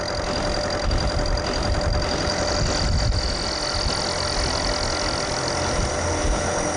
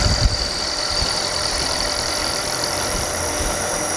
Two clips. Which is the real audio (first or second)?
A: first